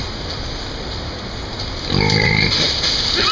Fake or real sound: real